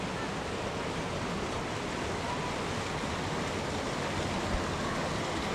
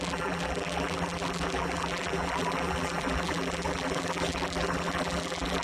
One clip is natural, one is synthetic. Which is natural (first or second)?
first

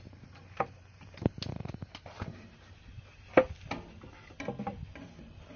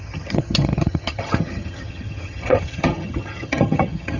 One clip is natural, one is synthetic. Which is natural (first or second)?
first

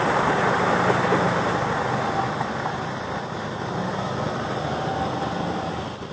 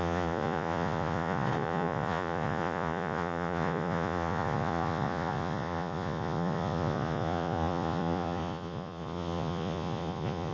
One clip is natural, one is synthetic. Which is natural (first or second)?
first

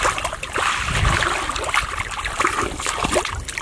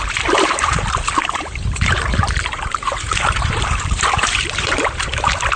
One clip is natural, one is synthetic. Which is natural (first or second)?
first